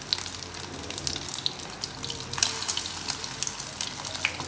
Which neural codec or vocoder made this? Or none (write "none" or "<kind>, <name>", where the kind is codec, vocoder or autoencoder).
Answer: none